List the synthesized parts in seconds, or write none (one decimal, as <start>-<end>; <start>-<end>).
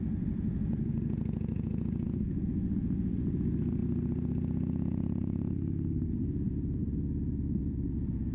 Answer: 0.0-6.8; 7.6-8.3